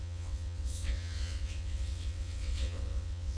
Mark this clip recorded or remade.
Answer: remade